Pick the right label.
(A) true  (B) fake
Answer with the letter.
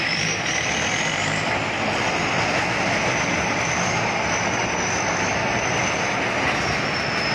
A